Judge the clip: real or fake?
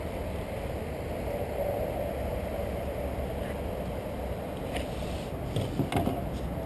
real